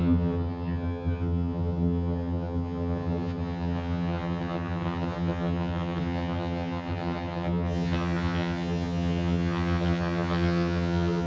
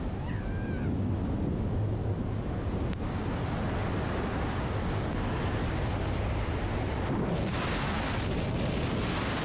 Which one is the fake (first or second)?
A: first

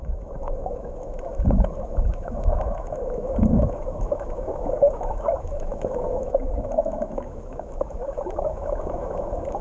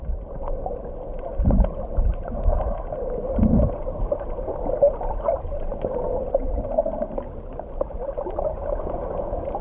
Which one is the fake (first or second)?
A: first